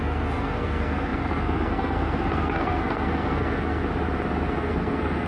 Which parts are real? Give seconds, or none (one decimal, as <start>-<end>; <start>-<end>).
3.8-4.5